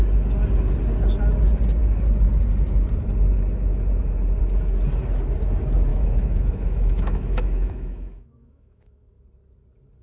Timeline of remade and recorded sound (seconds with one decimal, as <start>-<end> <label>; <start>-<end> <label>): 0.0-5.9 recorded; 5.9-9.2 remade; 9.2-10.0 recorded